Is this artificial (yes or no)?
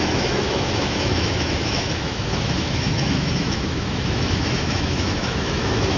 yes